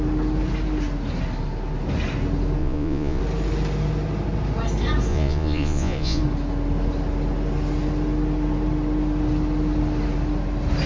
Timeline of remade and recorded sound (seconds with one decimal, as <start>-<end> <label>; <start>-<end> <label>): 0.0-2.6 recorded; 2.6-3.2 remade; 3.2-5.1 recorded; 5.1-6.2 remade; 6.2-10.9 recorded